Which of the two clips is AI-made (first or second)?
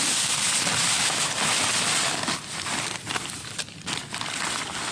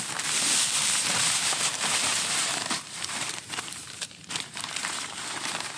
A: second